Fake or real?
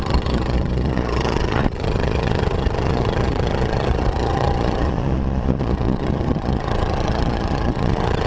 fake